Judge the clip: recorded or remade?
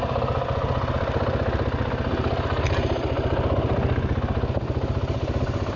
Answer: recorded